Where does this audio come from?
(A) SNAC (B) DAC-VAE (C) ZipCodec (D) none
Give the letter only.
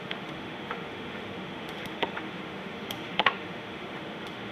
B